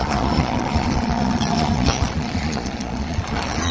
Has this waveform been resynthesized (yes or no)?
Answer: yes